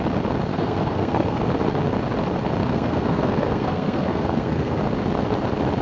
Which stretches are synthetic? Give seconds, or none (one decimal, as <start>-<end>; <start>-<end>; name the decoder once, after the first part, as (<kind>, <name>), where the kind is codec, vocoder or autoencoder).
0.5-1.4 (codec, SNAC); 2.6-4.8